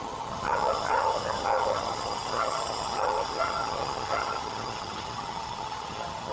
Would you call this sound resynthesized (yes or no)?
yes